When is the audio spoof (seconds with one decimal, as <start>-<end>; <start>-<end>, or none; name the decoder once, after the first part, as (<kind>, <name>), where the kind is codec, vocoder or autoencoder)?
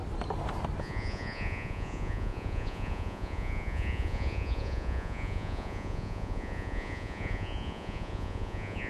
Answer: 0.8-8.9 (vocoder, Vocos)